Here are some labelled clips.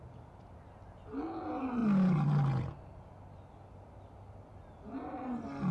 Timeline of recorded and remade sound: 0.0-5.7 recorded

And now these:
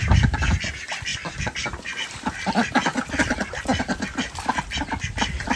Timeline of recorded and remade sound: 0.0-5.6 recorded

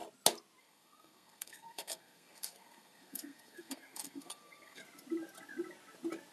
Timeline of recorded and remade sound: 0.0-0.6 recorded; 0.6-4.8 remade; 4.8-6.3 recorded

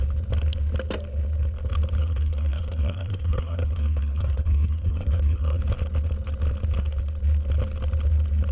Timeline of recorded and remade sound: 0.0-2.0 recorded; 2.0-5.6 remade; 5.6-8.5 recorded

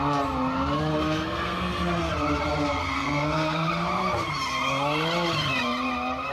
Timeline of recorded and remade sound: 0.0-0.9 recorded; 0.9-2.1 remade; 2.1-2.8 recorded; 2.8-3.7 remade; 3.7-6.3 recorded

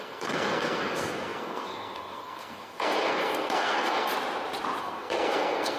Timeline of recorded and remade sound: 0.0-4.1 remade; 4.1-4.8 recorded; 4.8-5.8 remade

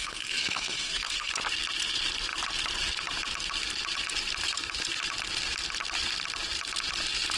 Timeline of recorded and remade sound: 0.0-1.3 remade; 1.3-7.4 recorded